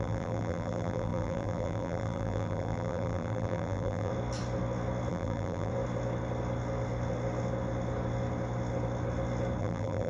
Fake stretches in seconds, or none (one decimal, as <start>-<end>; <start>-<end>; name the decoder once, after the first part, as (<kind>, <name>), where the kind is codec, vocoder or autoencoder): 0.0-4.1 (vocoder, BigVGAN v2); 5.1-5.7; 9.6-10.1